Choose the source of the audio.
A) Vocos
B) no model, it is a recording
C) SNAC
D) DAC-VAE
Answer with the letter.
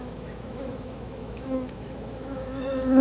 D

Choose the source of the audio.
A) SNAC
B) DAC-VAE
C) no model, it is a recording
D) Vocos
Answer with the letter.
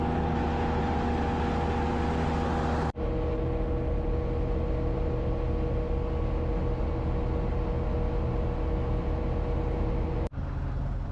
C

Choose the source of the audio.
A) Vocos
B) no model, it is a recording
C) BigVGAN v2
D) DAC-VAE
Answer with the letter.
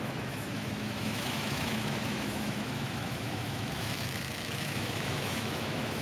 D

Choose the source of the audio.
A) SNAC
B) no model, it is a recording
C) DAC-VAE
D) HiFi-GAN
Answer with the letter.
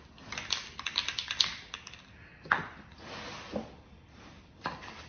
B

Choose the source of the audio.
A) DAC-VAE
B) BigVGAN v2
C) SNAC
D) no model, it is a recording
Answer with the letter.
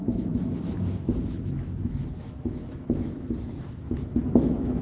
A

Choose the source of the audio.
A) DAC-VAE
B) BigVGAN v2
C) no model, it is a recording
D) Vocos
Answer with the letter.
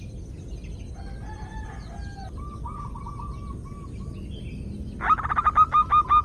C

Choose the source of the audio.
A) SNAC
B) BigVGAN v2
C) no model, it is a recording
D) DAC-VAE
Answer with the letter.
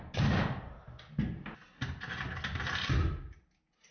C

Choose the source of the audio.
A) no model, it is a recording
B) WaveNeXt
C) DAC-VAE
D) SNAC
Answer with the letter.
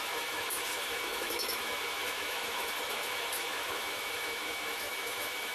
C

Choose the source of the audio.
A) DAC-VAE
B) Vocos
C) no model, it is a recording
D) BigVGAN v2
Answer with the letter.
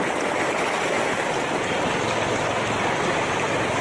C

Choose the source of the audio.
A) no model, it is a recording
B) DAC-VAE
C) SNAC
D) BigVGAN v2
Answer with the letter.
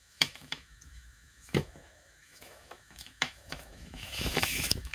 B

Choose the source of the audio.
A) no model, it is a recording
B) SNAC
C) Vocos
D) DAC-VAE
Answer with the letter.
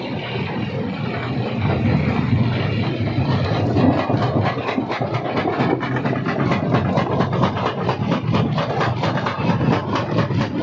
A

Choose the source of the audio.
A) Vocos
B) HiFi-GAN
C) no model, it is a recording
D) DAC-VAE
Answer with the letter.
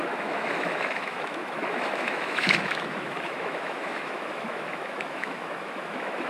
D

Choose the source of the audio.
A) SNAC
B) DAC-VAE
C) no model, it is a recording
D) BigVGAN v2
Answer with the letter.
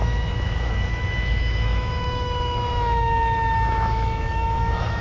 B